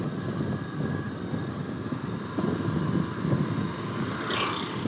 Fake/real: real